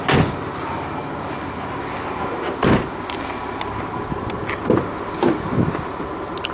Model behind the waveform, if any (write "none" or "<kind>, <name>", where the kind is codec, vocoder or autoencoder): none